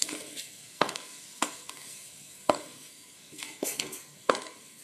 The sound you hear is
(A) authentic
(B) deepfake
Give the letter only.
B